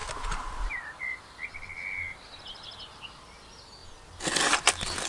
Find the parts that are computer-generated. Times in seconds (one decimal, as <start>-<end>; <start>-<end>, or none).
none